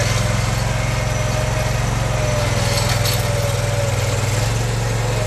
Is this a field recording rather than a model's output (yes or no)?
yes